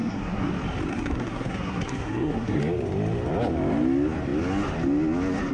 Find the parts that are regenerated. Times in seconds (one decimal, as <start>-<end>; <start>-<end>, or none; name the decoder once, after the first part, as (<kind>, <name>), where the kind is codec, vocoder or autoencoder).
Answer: 0.0-0.5 (codec, SNAC); 0.9-2.6